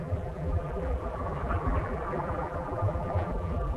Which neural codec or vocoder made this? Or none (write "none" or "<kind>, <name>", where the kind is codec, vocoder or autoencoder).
vocoder, BigVGAN v2